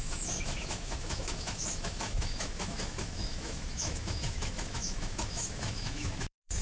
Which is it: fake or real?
fake